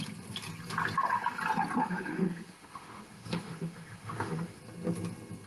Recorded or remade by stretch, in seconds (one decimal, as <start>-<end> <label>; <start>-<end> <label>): 0.0-1.8 recorded; 1.8-4.6 remade; 4.6-5.5 recorded